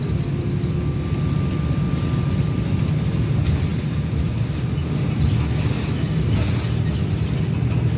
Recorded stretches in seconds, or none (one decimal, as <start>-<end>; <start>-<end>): 0.0-8.0